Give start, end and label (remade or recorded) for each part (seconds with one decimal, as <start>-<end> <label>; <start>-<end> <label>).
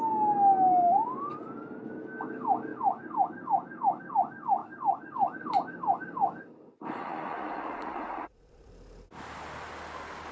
0.0-7.0 recorded; 7.0-8.7 remade; 8.7-10.3 recorded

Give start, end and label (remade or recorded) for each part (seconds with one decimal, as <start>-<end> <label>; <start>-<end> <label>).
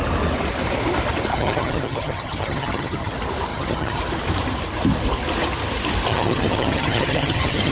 0.0-1.3 recorded; 1.3-3.1 remade; 3.1-3.5 recorded; 3.5-4.0 remade; 4.0-6.1 recorded; 6.1-7.7 remade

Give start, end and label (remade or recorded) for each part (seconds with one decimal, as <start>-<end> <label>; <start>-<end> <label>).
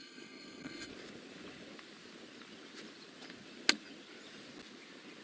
0.0-0.9 remade; 0.9-5.2 recorded